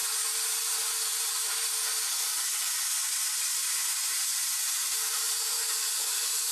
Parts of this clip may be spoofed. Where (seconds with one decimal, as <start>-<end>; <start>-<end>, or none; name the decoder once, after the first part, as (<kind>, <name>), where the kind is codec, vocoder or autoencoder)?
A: 3.5-6.5 (vocoder, BigVGAN v2)